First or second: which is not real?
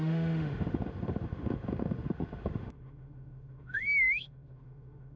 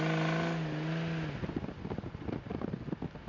first